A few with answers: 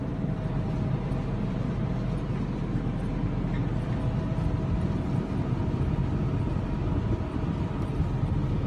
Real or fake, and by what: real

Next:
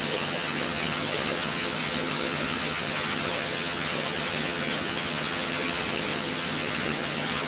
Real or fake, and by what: fake, vocoder, HiFi-GAN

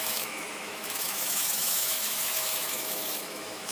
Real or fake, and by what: fake, autoencoder, DAC-VAE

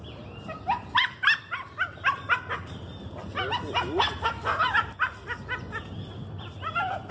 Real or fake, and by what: real